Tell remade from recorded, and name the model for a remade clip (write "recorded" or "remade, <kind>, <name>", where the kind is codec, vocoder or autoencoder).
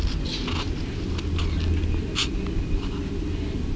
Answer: recorded